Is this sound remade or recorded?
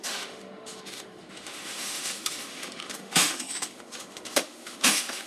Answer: remade